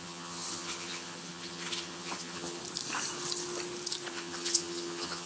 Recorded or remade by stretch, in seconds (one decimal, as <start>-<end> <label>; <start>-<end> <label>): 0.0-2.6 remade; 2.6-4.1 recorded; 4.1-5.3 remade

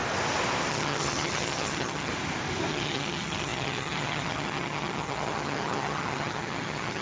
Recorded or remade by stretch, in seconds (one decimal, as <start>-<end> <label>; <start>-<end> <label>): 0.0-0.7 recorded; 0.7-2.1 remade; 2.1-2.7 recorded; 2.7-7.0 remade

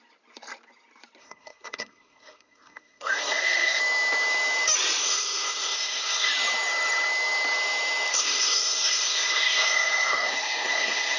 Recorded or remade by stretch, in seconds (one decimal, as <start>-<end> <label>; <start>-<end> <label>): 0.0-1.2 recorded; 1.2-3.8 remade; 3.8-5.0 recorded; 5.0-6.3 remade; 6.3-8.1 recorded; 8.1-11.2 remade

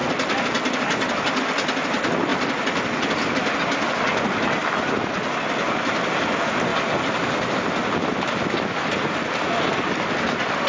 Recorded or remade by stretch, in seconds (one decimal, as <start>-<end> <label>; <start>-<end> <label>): 0.0-6.7 recorded; 6.7-7.7 remade; 7.7-10.7 recorded

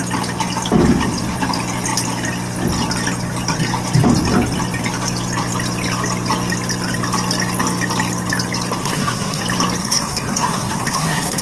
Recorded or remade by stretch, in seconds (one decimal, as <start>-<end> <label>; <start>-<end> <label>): 0.0-8.8 recorded; 8.8-9.4 remade; 9.4-9.8 recorded; 9.8-11.4 remade